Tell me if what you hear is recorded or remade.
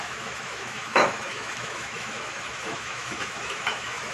remade